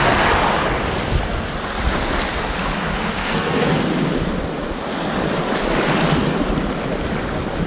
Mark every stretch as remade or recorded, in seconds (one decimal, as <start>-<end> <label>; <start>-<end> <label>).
0.0-3.2 recorded; 3.2-3.8 remade; 3.8-7.7 recorded